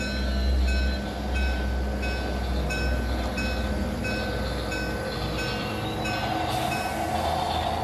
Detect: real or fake real